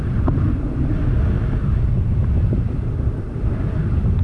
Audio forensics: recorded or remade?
recorded